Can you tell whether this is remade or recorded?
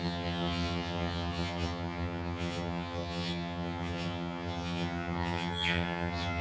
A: remade